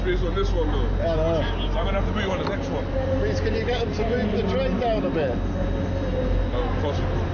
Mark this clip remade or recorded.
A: recorded